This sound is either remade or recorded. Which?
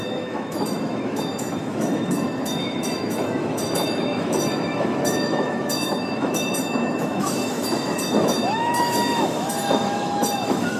remade